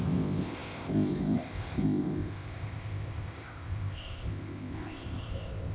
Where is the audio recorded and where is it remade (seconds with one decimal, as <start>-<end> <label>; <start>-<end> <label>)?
0.0-5.7 remade